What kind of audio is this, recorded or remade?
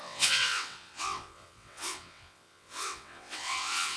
remade